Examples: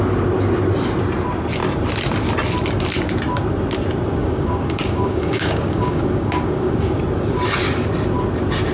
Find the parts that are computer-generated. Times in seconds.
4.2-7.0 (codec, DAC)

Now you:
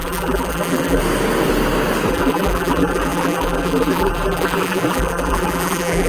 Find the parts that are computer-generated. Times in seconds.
0.0-1.0 (vocoder, BigVGAN v2); 2.1-6.1

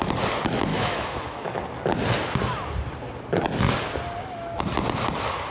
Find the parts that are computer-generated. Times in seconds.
0.7-1.6 (autoencoder, DAC-VAE)

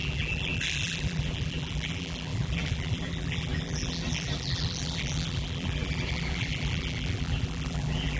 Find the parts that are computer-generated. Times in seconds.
0.0-8.2 (vocoder, BigVGAN v2)